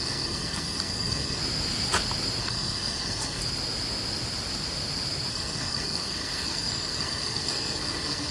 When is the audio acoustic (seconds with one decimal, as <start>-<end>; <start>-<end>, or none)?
1.4-2.4; 3.4-5.3